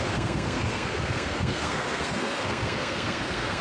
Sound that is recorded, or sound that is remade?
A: remade